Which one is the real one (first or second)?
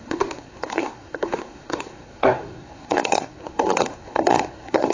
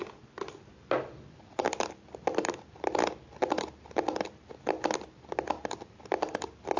second